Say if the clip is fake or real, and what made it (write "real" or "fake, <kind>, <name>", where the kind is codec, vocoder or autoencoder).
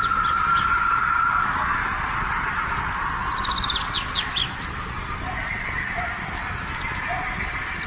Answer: real